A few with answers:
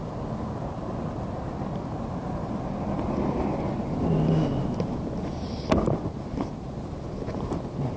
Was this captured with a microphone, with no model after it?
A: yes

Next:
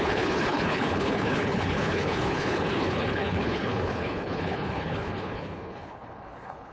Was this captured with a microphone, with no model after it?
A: no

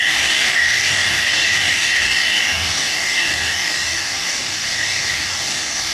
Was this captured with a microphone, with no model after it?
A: no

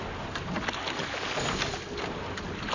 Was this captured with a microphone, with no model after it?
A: yes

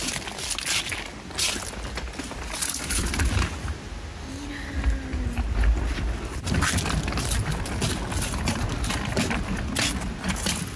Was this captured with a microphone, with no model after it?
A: yes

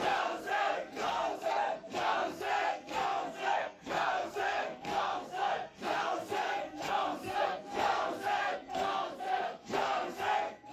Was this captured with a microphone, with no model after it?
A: no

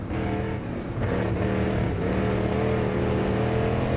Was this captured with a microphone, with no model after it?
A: yes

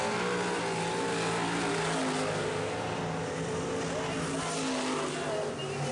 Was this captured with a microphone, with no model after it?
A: yes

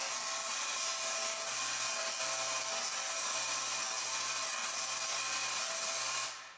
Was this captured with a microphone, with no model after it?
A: yes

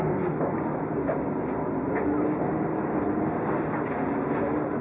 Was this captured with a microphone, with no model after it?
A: yes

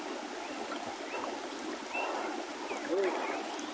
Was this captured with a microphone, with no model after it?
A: yes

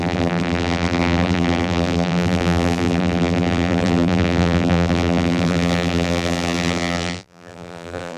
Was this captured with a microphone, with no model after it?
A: no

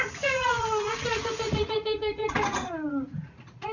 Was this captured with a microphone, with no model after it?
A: no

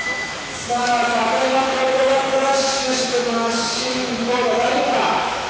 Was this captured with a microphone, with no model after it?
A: no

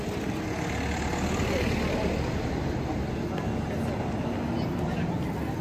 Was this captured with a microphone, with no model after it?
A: yes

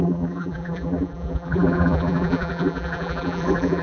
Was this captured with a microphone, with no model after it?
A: no